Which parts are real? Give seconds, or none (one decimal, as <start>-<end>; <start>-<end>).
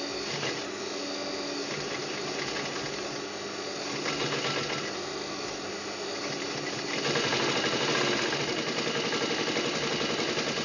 0.0-10.6